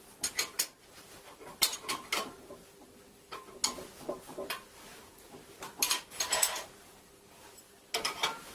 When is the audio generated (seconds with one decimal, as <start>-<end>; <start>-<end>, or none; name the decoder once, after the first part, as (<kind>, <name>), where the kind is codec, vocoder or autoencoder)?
none